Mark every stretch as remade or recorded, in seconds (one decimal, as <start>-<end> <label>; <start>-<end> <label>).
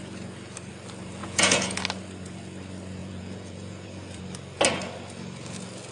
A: 0.0-1.2 recorded; 1.2-1.8 remade; 1.8-3.0 recorded; 3.0-4.2 remade; 4.2-5.9 recorded